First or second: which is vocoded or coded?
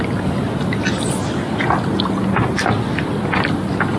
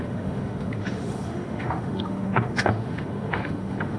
second